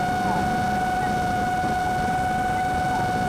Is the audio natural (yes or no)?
yes